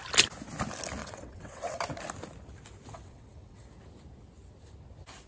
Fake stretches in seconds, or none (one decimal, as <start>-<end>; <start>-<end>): 1.0-1.8; 2.9-3.7